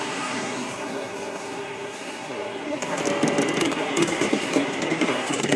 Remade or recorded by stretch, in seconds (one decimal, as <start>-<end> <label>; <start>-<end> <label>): 0.0-3.0 remade; 3.0-3.6 recorded; 3.6-5.6 remade